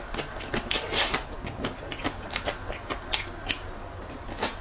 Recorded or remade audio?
recorded